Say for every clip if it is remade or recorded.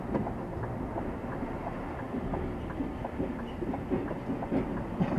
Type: recorded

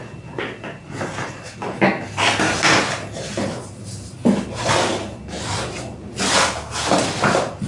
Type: recorded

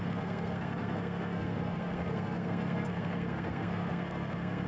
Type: remade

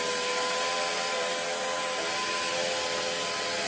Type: recorded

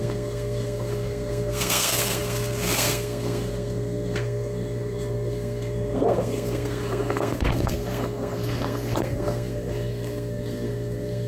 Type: remade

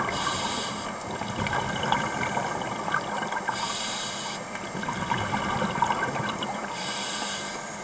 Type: recorded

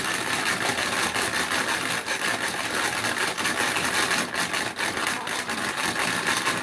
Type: recorded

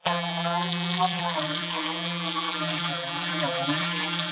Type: remade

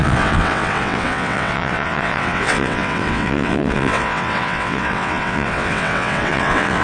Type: remade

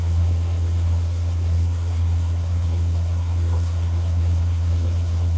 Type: remade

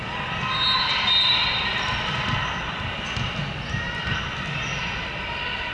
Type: recorded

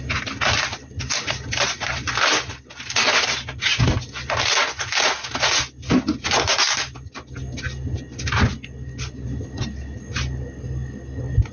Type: recorded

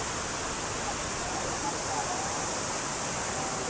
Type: recorded